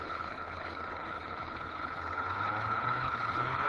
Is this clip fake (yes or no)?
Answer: yes